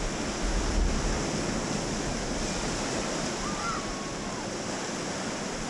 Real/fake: real